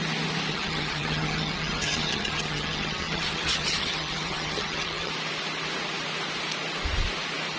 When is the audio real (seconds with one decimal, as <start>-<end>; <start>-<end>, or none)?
0.0-0.5; 5.1-7.6